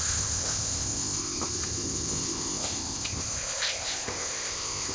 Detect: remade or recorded remade